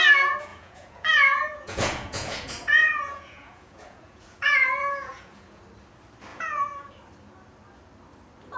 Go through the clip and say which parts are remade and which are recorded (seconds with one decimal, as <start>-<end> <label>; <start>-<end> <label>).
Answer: 0.0-0.5 recorded; 0.5-5.6 remade; 5.6-6.3 recorded; 6.3-6.9 remade; 6.9-8.6 recorded